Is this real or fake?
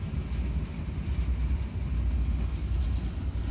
real